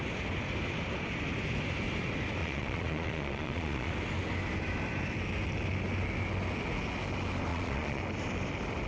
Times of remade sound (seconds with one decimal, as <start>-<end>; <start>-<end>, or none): 2.4-3.9; 7.5-8.0